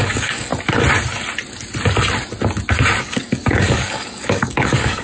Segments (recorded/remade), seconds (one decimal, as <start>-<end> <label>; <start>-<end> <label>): 0.0-0.5 remade; 0.5-3.0 recorded; 3.0-5.0 remade